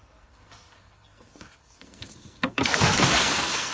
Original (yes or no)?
no